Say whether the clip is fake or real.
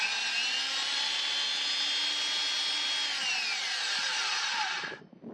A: real